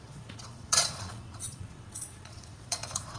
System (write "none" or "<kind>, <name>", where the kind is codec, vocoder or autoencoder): vocoder, Vocos